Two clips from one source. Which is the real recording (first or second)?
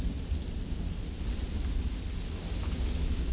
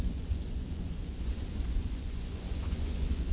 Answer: first